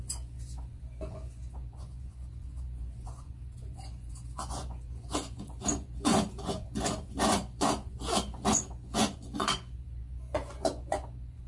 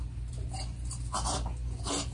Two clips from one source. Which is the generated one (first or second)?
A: first